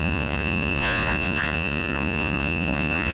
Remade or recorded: remade